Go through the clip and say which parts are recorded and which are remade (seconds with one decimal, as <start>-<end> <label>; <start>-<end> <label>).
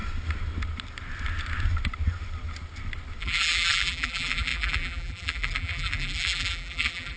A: 0.0-3.2 recorded; 3.2-7.2 remade